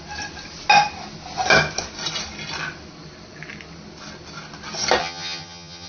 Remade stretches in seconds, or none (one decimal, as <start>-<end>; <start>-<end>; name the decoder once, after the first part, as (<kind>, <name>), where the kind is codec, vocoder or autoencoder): 5.0-5.9 (vocoder, HiFi-GAN)